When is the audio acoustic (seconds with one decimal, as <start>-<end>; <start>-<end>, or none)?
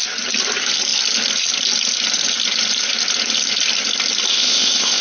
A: 0.0-4.3